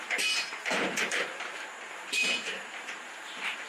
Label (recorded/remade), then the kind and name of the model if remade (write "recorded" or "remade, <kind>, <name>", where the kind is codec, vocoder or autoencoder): remade, vocoder, BigVGAN v2